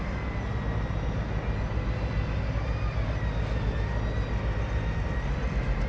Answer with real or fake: real